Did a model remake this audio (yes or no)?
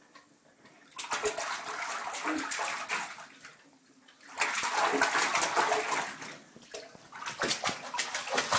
no